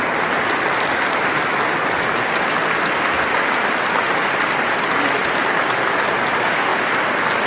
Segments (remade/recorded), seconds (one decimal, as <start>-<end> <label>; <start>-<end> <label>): 0.0-7.5 recorded